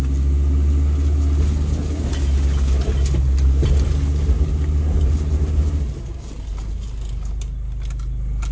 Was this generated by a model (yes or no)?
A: no